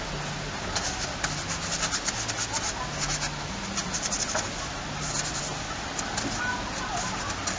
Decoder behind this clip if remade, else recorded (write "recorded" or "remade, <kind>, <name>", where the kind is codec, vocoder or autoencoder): recorded